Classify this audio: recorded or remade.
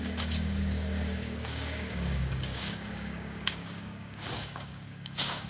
remade